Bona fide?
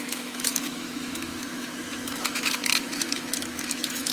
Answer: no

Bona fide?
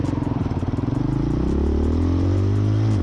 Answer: yes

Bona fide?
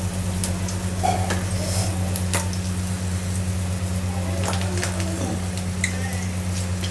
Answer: yes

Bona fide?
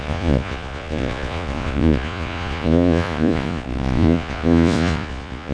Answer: no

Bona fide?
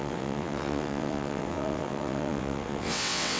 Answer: no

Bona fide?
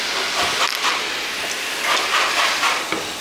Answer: yes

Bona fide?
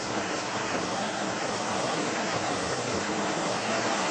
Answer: no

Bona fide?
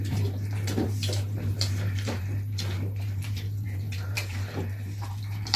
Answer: no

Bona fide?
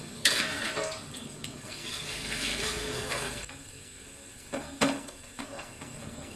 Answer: no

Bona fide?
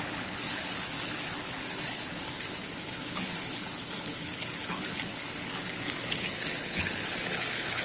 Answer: no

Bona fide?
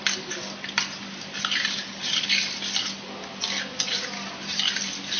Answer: yes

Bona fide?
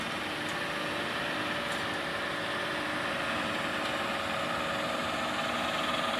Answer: yes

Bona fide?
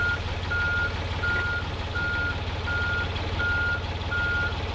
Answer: yes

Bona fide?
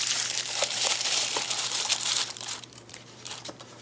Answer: no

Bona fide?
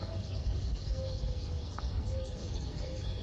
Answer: no